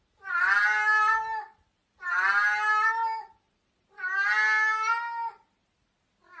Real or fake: real